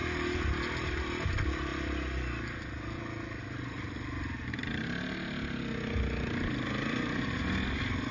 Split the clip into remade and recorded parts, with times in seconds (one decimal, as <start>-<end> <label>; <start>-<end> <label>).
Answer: 0.0-8.1 recorded